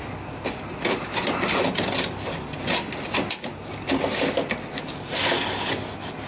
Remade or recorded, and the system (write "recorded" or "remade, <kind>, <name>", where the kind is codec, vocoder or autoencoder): recorded